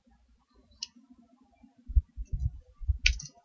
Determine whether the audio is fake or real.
real